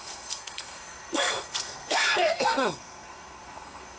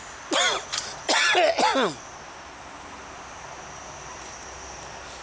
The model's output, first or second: first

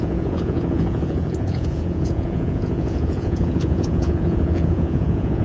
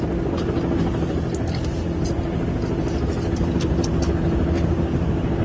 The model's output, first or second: first